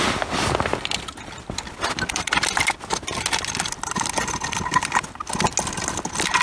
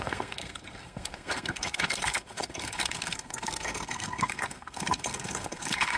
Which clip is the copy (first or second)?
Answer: second